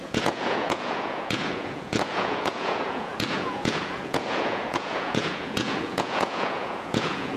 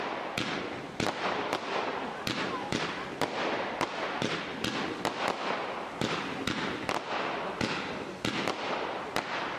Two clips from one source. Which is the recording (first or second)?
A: second